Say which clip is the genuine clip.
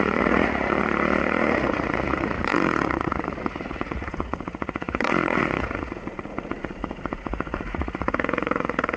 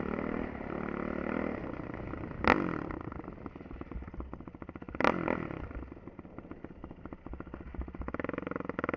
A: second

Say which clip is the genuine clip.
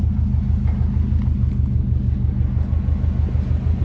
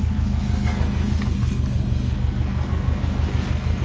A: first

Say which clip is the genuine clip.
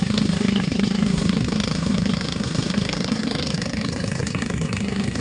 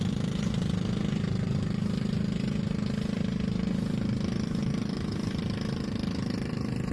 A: second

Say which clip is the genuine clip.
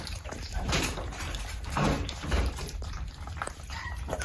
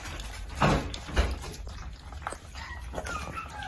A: second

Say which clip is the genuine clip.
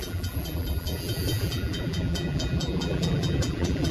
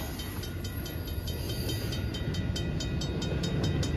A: second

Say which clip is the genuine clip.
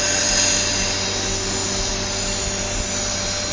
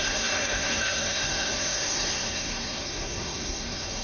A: first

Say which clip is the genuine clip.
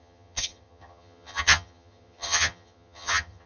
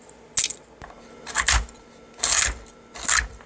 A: second